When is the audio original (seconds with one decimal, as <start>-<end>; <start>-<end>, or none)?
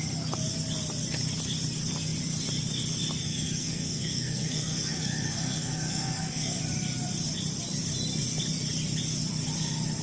0.0-3.2; 6.6-10.0